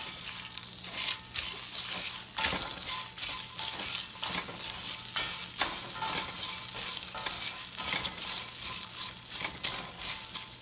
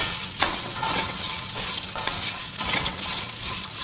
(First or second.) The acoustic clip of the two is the first